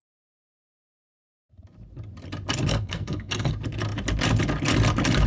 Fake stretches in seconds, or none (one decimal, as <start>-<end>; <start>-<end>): 2.7-3.5